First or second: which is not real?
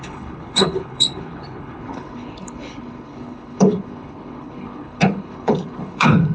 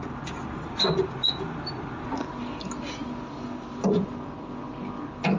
first